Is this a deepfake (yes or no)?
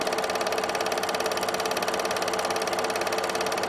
no